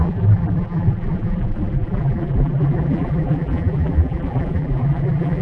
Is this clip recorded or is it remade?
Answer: remade